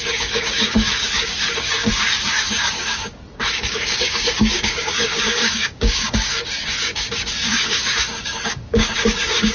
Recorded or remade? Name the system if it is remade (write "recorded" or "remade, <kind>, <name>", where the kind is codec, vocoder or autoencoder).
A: remade, codec, DAC